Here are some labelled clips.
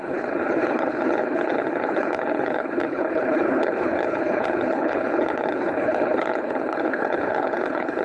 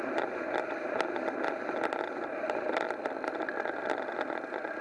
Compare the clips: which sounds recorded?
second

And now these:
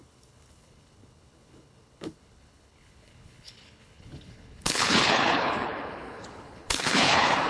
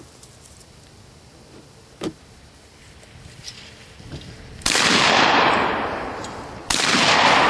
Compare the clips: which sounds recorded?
second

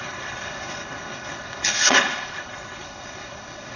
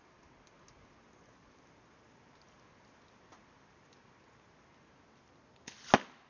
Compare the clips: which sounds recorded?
second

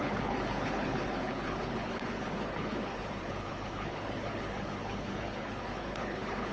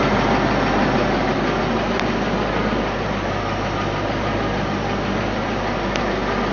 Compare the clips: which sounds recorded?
second